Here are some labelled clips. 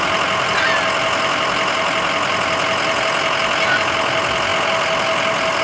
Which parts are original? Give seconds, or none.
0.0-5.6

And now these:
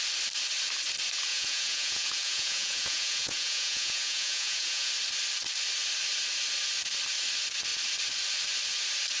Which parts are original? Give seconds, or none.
0.0-1.3; 4.9-9.2